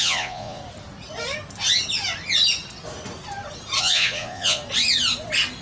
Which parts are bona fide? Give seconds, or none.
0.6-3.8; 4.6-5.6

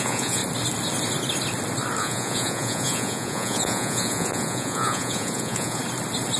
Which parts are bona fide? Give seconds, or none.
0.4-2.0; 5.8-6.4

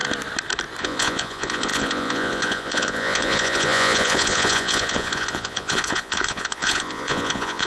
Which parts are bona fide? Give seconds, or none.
0.0-0.8

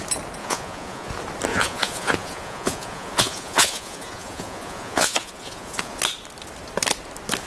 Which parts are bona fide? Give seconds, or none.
0.0-0.4; 1.1-1.5; 6.0-7.5

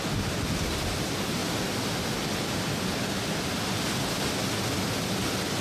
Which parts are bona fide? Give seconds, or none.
0.0-5.6